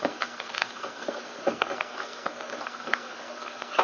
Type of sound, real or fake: fake